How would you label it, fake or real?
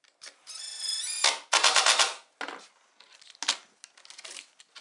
real